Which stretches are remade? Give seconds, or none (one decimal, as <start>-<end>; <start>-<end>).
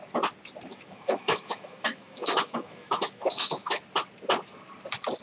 0.7-3.8